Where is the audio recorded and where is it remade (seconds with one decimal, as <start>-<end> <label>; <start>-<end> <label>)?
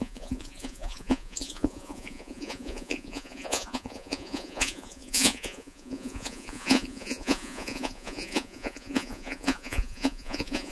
0.0-10.7 remade